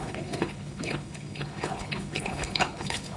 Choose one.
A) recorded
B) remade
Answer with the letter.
B